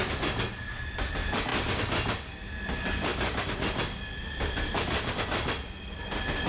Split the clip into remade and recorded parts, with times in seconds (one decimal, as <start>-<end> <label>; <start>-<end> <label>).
0.0-6.5 recorded